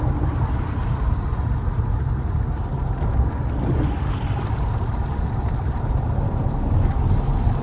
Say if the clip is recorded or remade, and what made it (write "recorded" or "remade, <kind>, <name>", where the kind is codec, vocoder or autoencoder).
recorded